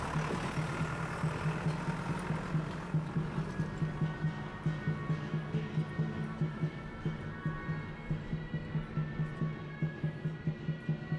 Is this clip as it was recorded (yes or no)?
yes